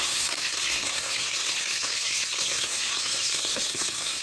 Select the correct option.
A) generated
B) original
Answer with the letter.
A